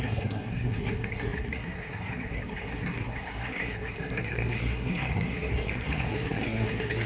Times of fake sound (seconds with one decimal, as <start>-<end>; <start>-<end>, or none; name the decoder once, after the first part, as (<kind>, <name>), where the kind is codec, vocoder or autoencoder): 0.0-7.1 (codec, SNAC)